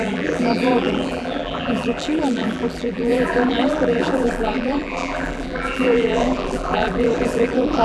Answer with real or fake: fake